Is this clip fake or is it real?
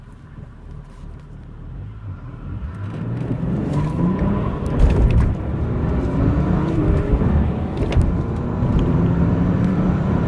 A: fake